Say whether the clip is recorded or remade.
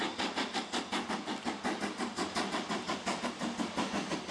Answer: recorded